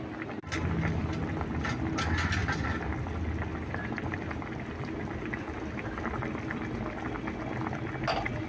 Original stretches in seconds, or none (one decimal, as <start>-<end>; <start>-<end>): 0.0-8.5